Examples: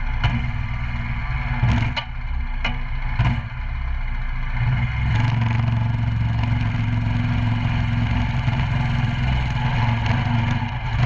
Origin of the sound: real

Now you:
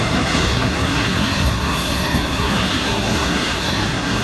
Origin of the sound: fake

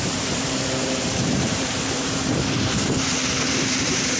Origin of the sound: fake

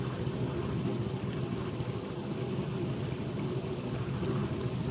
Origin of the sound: real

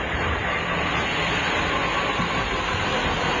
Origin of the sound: real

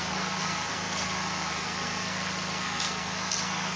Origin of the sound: fake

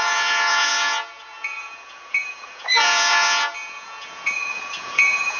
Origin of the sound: fake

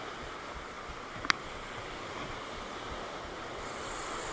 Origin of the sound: real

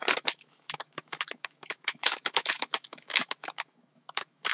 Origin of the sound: fake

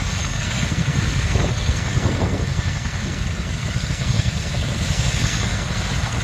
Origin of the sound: fake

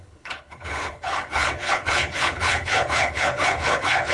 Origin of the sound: fake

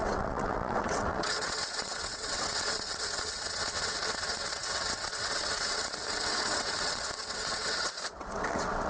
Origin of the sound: fake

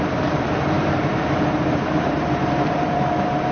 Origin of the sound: fake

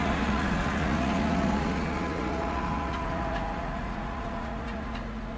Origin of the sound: fake